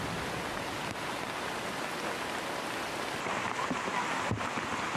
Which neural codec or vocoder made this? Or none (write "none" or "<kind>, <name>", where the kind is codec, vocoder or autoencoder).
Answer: none